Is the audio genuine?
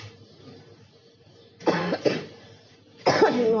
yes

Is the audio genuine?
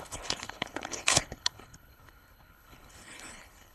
no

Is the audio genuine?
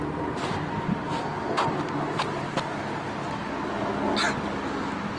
yes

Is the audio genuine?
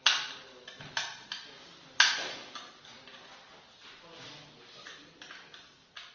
yes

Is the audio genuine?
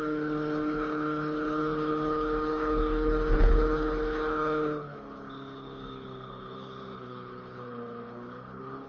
no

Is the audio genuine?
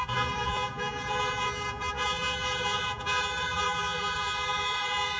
no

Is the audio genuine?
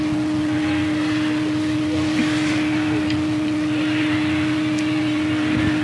yes